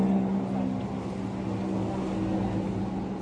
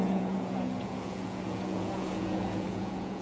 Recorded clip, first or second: first